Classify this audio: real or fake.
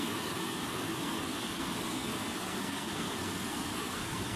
fake